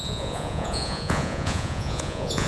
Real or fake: fake